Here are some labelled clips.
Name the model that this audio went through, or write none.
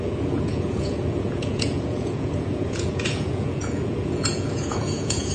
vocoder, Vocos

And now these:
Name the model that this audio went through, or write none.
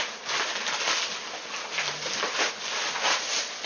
none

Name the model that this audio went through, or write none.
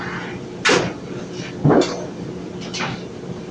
none